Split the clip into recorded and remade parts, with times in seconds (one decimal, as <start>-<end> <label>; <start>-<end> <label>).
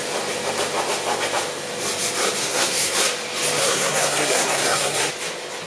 0.0-2.4 recorded; 2.4-3.0 remade; 3.0-3.6 recorded; 3.6-5.1 remade; 5.1-5.7 recorded